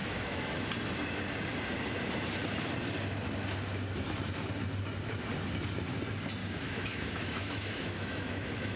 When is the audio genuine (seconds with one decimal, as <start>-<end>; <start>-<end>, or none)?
0.7-6.4